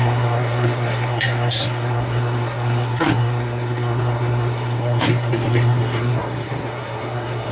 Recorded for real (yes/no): no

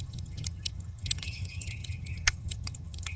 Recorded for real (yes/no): no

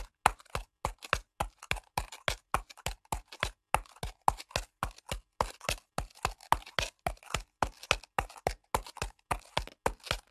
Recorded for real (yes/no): yes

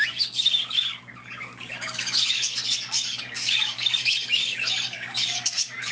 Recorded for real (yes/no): no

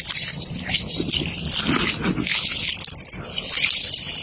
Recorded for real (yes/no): yes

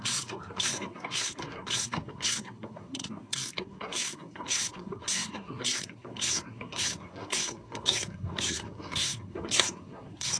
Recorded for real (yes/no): no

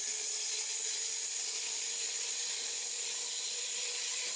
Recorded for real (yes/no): yes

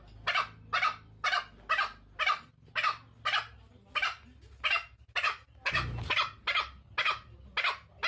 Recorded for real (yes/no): yes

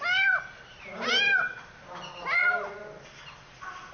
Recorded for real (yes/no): yes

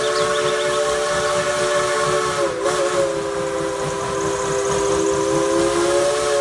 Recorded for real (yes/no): yes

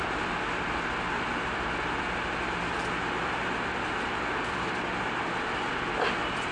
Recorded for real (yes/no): yes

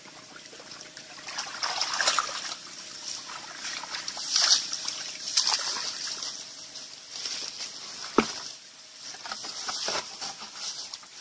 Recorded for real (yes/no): yes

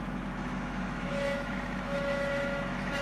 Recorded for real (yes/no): no